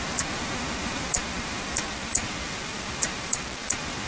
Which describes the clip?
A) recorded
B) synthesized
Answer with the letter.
A